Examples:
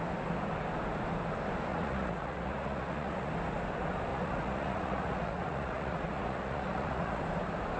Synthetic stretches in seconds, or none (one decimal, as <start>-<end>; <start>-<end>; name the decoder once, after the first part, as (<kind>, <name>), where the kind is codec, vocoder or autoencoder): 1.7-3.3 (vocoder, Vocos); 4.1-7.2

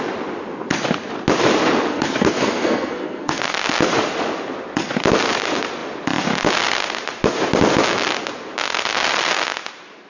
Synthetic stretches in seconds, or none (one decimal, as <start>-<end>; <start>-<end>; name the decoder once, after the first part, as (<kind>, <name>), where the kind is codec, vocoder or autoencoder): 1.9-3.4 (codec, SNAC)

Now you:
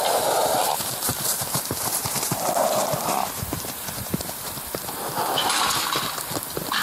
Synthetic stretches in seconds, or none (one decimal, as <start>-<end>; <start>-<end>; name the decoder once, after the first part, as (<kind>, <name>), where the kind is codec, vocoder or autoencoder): 1.1-4.4 (vocoder, BigVGAN v2)

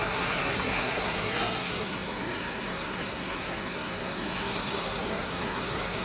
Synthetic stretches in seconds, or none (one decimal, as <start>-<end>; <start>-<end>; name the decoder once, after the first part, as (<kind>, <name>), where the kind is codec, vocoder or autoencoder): 0.0-6.0 (codec, SNAC)